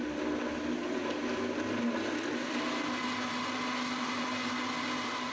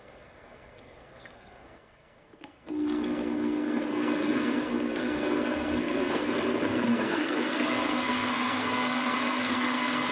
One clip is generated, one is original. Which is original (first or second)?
first